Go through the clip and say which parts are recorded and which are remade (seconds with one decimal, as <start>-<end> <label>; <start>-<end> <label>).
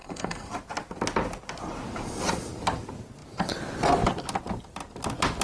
0.0-0.5 remade; 0.5-5.4 recorded